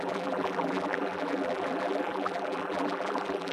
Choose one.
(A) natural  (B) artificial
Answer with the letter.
B